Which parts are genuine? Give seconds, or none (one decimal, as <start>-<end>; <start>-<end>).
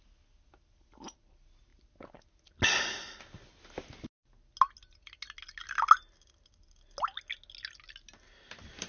0.0-8.9